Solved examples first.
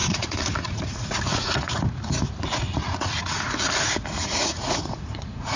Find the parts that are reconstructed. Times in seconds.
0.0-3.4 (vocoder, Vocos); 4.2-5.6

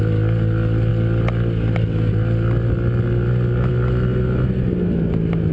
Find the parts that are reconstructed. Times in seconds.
none

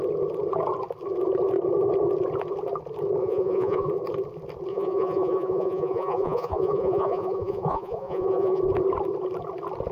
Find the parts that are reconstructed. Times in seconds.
3.2-3.9 (vocoder, Vocos); 4.7-8.6